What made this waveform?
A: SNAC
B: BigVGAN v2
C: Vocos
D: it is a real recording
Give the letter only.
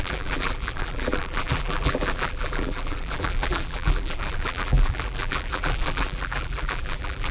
B